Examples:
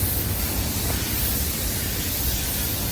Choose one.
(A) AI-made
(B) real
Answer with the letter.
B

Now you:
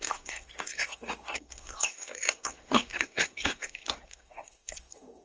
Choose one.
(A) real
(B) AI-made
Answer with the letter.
B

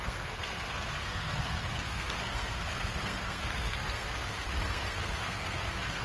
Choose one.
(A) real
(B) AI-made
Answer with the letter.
B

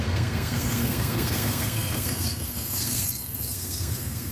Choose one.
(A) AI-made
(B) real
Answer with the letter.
A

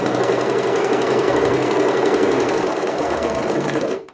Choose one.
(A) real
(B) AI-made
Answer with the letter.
B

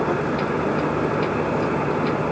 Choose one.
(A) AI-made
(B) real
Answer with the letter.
B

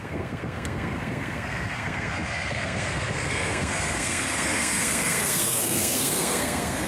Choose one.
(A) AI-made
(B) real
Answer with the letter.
A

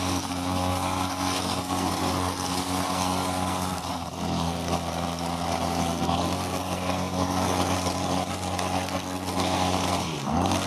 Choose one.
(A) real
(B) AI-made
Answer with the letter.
B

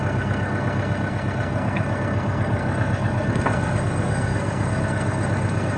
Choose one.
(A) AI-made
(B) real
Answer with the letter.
A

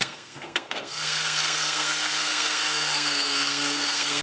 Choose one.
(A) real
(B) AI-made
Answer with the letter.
B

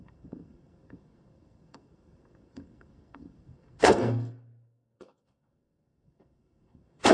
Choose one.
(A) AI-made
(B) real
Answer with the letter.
A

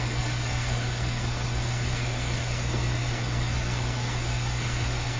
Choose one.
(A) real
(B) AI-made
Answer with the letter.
B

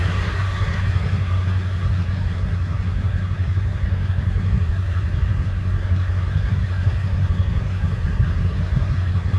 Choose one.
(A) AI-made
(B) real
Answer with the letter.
A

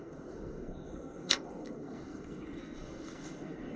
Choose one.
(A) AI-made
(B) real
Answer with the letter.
A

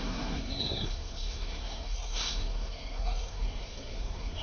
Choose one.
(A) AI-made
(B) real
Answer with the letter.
A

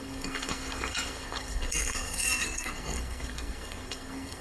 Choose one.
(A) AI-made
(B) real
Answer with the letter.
A